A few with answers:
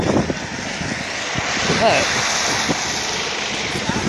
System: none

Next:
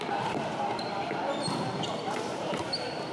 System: vocoder, BigVGAN v2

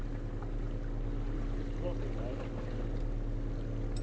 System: none